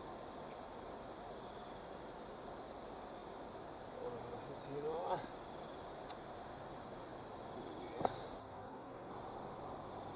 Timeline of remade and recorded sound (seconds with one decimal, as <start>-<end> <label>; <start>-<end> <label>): 0.0-8.4 recorded; 8.4-9.1 remade; 9.1-10.2 recorded